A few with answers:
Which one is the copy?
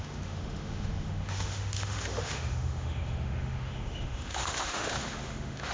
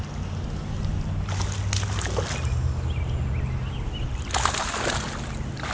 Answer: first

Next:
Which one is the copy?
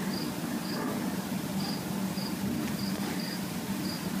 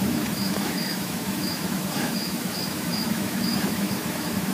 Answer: second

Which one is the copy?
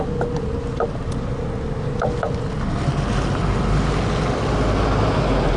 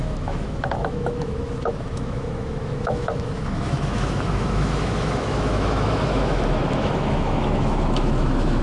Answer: second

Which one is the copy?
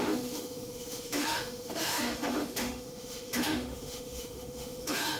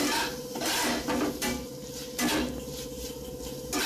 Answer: first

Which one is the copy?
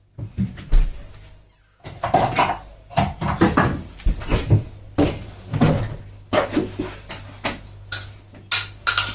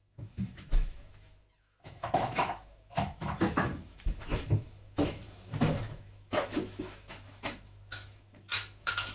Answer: second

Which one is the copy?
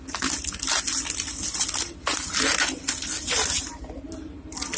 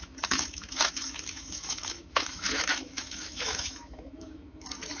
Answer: second